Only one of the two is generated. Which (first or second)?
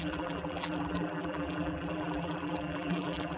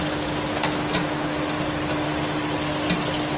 first